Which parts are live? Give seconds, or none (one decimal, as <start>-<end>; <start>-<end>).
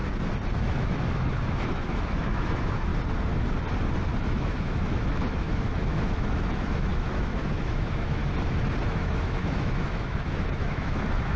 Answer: 0.0-0.6; 2.9-4.2; 8.2-8.9